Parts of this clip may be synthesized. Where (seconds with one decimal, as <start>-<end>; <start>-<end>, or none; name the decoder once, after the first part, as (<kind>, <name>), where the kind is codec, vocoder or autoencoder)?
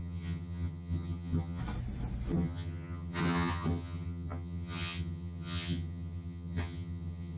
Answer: 0.0-1.6 (vocoder, HiFi-GAN); 2.3-7.4